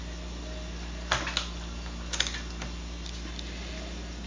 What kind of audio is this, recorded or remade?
recorded